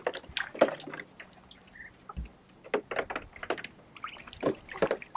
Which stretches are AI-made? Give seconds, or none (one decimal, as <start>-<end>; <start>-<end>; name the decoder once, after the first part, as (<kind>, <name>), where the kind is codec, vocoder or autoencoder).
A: none